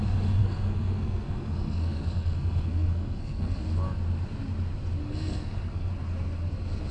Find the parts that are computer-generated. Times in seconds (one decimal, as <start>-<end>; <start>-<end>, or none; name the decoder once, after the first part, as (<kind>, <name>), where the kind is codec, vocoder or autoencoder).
0.4-3.6 (codec, SNAC); 5.0-5.9